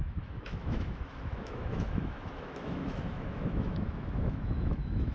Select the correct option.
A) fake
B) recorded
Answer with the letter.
A